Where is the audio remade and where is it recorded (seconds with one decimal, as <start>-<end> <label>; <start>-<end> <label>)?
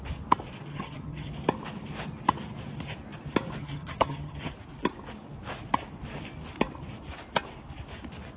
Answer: 0.0-0.7 recorded; 0.7-1.3 remade; 1.3-3.6 recorded; 3.6-4.5 remade; 4.5-8.4 recorded